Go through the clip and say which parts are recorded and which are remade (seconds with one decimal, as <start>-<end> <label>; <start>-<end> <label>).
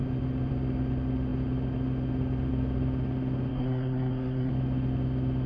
0.0-3.5 recorded; 3.5-4.5 remade; 4.5-5.5 recorded